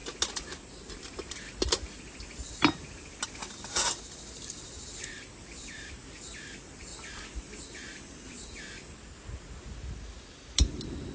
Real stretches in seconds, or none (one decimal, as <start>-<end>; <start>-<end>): 0.0-11.1